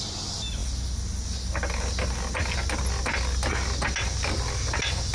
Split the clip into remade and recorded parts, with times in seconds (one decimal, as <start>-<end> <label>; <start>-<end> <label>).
0.0-5.1 recorded